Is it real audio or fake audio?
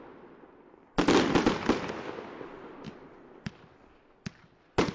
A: real